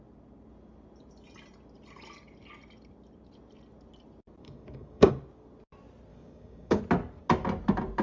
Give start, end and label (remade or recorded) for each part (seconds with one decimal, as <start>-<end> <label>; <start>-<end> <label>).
0.0-4.4 recorded; 4.4-5.1 remade; 5.1-6.1 recorded; 6.1-6.8 remade; 6.8-8.0 recorded